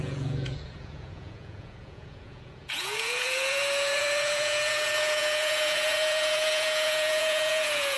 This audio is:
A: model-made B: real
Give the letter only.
A